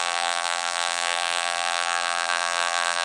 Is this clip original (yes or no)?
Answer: no